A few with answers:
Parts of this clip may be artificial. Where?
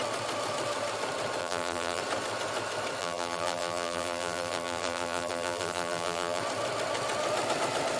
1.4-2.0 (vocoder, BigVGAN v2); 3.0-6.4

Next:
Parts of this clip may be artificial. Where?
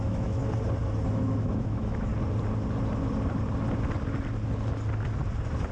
0.0-0.4 (autoencoder, DAC-VAE); 1.1-2.1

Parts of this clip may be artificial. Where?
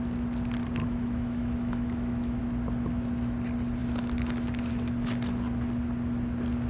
0.8-2.4 (autoencoder, DAC-VAE)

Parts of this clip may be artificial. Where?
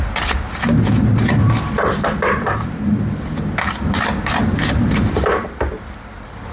1.4-5.3 (vocoder, BigVGAN v2)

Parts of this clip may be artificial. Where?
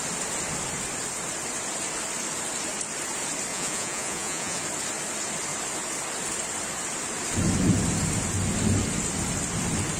3.5-4.6 (vocoder, Vocos)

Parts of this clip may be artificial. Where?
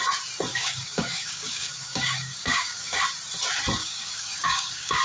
0.5-3.0 (codec, DAC); 3.8-5.0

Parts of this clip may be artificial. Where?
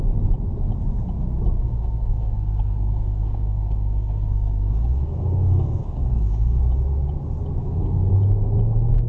1.6-6.6 (codec, SNAC); 7.6-8.1